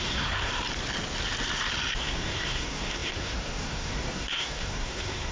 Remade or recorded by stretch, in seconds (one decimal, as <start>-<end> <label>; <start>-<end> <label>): 0.0-0.5 remade; 0.5-2.0 recorded; 2.0-5.3 remade